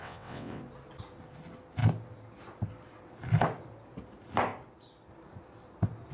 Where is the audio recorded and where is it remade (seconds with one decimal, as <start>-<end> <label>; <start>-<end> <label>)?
0.0-0.6 remade; 0.6-6.1 recorded